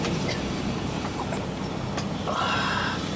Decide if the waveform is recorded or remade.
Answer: recorded